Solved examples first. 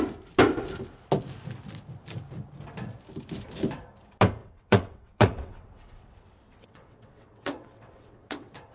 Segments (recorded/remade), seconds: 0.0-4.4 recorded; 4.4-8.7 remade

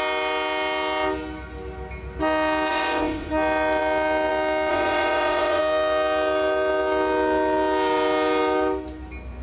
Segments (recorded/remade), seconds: 0.0-2.7 recorded; 2.7-3.3 remade; 3.3-4.7 recorded; 4.7-5.6 remade; 5.6-9.4 recorded

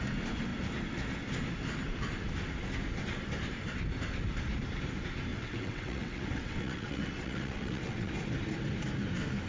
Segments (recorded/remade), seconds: 0.0-5.3 recorded; 5.3-8.1 remade; 8.1-9.5 recorded

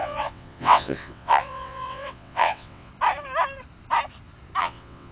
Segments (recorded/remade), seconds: 0.0-2.9 remade; 2.9-4.6 recorded; 4.6-5.1 remade

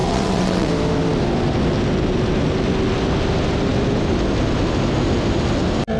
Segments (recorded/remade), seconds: 0.0-0.7 remade; 0.7-6.0 recorded

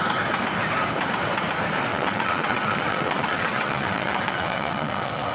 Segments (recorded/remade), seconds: 0.0-1.9 recorded; 1.9-5.3 remade

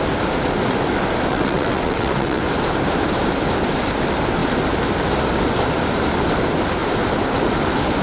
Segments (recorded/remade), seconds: 0.0-1.3 recorded; 1.3-2.4 remade; 2.4-8.0 recorded